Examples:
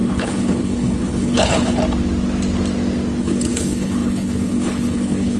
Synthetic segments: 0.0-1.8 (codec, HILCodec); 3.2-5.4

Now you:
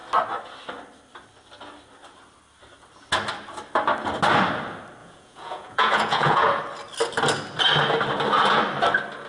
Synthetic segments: 5.0-6.6 (vocoder, Vocos)

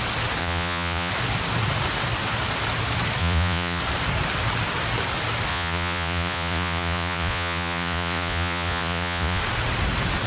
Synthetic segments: 0.4-1.1 (vocoder, Vocos); 3.2-3.8; 5.5-9.4